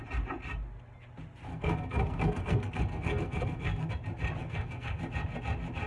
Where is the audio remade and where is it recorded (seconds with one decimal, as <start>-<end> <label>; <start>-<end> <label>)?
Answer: 0.0-1.5 recorded; 1.5-3.9 remade; 3.9-4.4 recorded; 4.4-5.0 remade; 5.0-5.9 recorded